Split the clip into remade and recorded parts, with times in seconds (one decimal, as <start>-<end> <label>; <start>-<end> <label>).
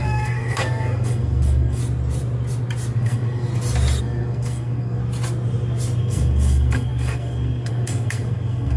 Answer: 0.0-1.8 remade; 1.8-3.0 recorded; 3.0-3.5 remade; 3.5-4.0 recorded; 4.0-5.0 remade; 5.0-6.0 recorded; 6.0-8.8 remade